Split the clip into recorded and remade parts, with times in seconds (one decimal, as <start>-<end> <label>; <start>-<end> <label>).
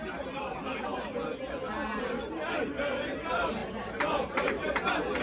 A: 0.0-0.9 remade; 0.9-2.0 recorded; 2.0-5.2 remade